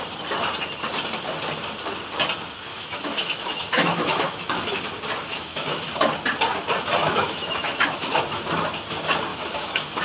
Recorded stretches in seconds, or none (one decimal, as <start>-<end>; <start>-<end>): 0.0-2.7; 4.8-5.3; 5.9-7.0; 8.2-9.3